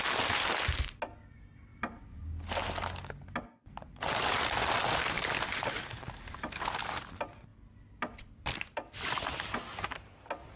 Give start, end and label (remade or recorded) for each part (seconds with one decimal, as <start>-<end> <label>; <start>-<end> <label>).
0.0-1.7 recorded; 1.7-2.3 remade; 2.3-7.5 recorded; 7.5-9.4 remade; 9.4-10.6 recorded